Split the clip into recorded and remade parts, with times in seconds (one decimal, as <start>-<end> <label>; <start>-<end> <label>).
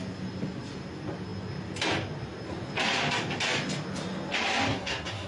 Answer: 0.0-4.7 recorded; 4.7-5.3 remade